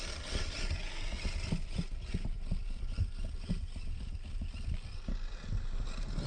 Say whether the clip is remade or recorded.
recorded